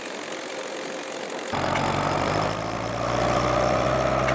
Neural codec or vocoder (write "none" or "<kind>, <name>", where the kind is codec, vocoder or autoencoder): vocoder, BigVGAN v2